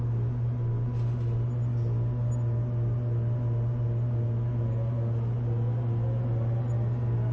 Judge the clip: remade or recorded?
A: recorded